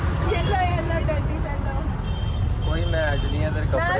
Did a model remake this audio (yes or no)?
no